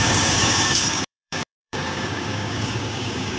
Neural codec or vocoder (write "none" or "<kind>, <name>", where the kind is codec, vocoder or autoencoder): codec, DAC